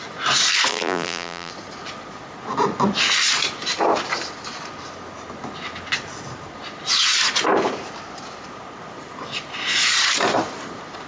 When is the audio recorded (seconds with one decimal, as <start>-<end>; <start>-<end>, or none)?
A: 0.0-0.7; 1.5-11.1